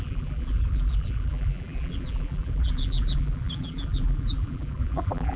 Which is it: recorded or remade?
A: remade